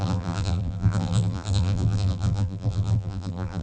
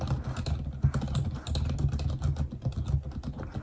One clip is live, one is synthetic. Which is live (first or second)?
second